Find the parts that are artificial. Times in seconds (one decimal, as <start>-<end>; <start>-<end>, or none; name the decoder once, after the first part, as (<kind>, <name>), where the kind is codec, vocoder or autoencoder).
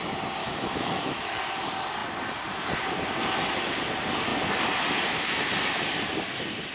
0.4-1.4 (autoencoder, DAC-VAE)